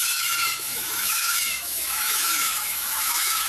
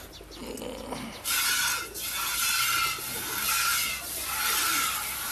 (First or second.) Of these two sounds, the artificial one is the first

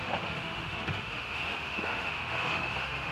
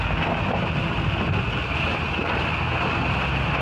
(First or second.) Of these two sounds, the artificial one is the first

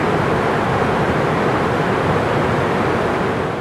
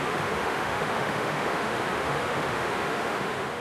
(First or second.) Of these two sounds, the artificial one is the second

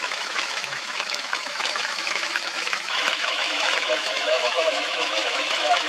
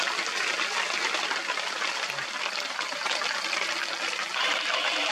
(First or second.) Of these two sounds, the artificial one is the first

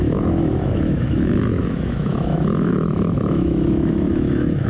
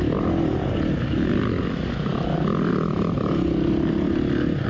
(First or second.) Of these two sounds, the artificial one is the first